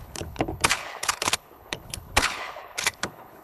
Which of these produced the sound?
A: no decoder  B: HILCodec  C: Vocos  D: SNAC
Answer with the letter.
B